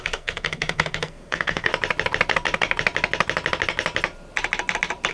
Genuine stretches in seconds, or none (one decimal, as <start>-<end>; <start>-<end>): 1.7-5.1